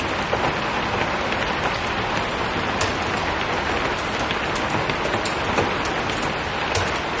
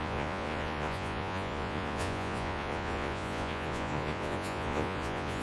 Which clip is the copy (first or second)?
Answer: second